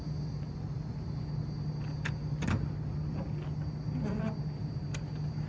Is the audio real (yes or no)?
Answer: yes